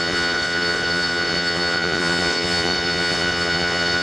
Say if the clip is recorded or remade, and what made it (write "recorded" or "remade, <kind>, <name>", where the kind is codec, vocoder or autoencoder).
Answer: remade, vocoder, Vocos